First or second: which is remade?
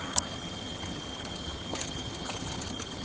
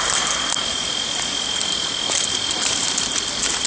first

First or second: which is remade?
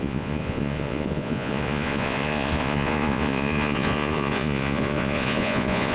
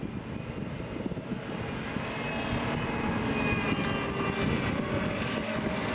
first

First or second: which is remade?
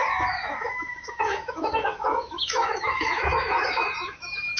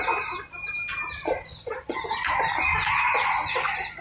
first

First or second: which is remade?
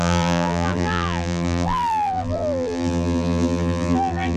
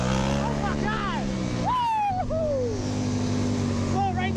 first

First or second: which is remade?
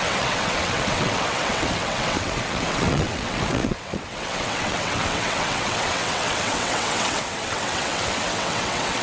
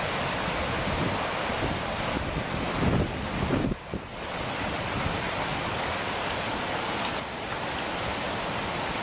first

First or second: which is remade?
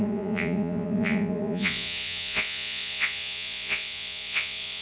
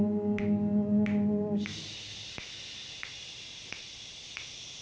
first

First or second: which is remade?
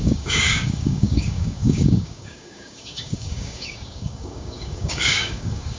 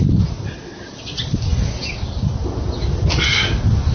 first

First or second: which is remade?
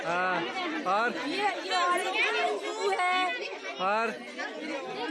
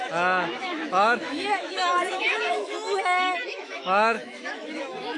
second